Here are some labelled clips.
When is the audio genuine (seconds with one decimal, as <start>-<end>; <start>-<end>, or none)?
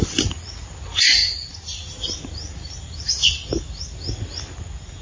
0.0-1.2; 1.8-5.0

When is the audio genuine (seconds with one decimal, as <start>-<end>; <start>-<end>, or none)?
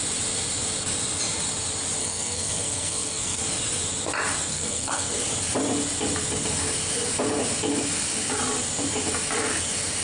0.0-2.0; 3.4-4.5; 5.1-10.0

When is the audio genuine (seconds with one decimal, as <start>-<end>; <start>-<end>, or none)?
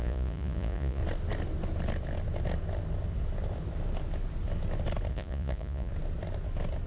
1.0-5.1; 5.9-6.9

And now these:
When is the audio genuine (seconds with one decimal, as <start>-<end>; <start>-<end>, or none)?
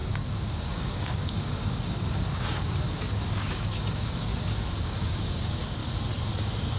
4.3-4.8; 5.8-6.8